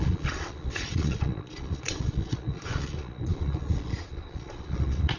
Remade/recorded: remade